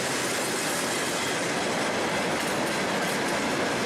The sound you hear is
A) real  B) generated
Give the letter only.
A